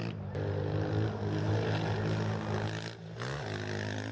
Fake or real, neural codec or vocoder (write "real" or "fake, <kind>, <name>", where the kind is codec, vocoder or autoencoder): real